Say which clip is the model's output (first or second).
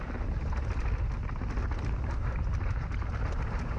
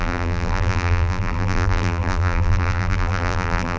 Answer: second